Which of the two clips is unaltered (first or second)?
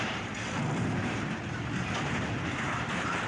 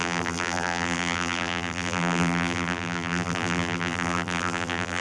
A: first